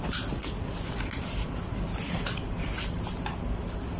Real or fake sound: real